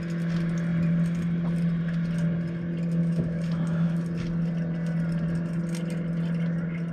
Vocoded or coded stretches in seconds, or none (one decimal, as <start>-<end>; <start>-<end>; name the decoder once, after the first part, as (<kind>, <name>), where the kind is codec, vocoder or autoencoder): 3.0-4.0 (autoencoder, DAC-VAE)